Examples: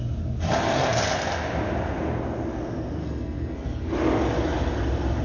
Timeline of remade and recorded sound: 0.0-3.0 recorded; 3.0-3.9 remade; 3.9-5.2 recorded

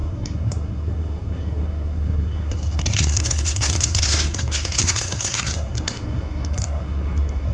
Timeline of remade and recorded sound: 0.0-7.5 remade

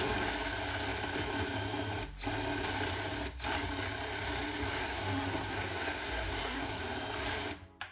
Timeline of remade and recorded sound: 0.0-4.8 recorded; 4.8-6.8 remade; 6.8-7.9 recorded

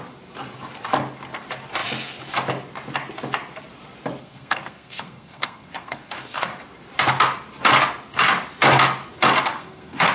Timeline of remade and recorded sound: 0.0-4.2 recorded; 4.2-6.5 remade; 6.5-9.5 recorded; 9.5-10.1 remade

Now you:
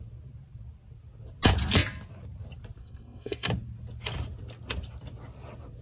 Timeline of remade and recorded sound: 0.0-2.8 recorded; 2.8-3.5 remade; 3.5-5.8 recorded

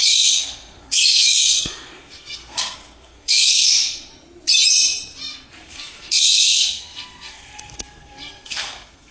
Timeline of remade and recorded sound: 0.0-4.1 remade; 4.1-5.6 recorded; 5.6-9.1 remade

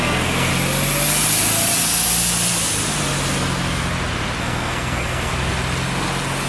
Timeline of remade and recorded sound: 0.0-0.5 remade; 0.5-4.4 recorded; 4.4-5.3 remade; 5.3-6.5 recorded

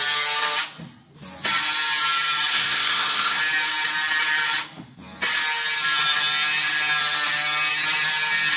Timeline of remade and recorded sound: 0.0-2.5 recorded; 2.5-3.4 remade; 3.4-8.6 recorded